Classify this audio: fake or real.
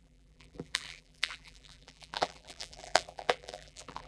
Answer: fake